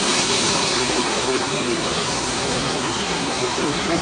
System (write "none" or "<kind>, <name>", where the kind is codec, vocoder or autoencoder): codec, SNAC